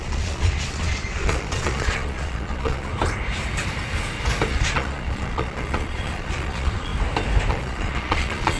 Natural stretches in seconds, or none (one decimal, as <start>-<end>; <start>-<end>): 2.9-4.5; 6.9-7.5